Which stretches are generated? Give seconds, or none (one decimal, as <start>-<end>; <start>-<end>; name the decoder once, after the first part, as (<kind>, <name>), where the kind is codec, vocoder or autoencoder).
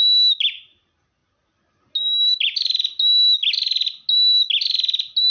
none